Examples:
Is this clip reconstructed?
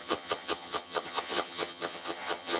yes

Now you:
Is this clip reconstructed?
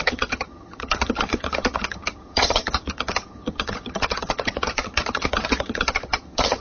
yes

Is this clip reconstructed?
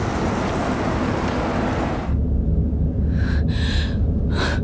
no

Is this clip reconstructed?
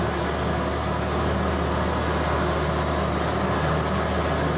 no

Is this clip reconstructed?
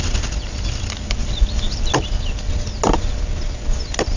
no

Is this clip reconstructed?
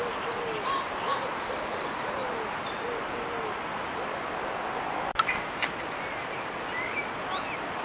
no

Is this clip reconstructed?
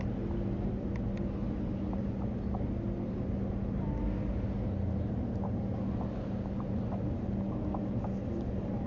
no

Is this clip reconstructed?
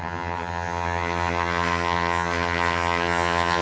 yes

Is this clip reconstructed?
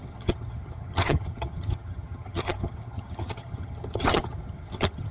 yes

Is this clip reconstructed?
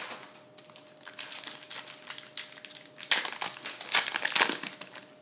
no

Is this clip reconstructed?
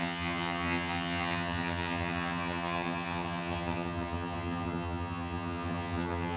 yes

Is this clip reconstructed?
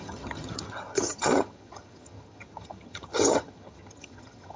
yes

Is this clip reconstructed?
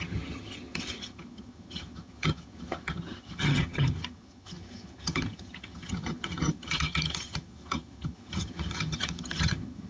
yes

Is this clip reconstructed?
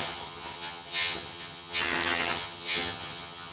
yes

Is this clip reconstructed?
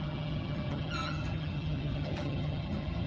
yes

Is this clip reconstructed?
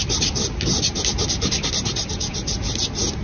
no